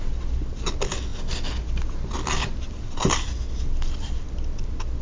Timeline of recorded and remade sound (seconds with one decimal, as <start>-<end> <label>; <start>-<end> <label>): 0.0-5.0 recorded